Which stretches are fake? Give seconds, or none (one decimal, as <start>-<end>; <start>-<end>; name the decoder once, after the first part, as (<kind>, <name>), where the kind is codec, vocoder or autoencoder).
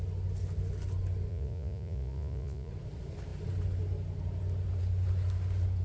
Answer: 1.3-2.7 (vocoder, Vocos)